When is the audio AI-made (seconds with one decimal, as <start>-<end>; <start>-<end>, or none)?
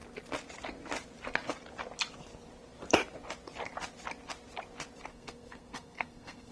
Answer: 5.1-6.5